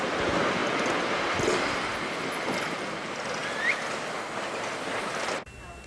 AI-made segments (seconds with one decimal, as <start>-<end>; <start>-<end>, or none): none